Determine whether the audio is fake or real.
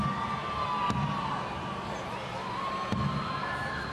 real